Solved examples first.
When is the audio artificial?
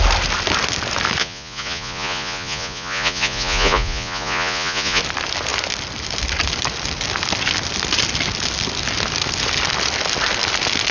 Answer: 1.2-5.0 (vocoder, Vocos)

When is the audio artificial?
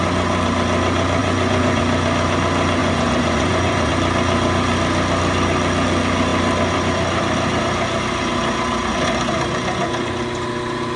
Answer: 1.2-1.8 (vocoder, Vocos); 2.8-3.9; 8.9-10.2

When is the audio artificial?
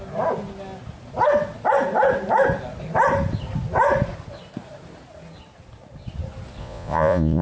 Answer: 6.6-7.4 (vocoder, Vocos)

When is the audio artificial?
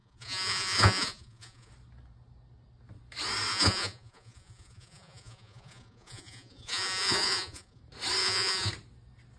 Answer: 0.0-1.7 (vocoder, Vocos); 3.5-7.8; 8.2-8.7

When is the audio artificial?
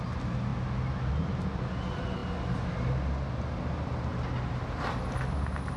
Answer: none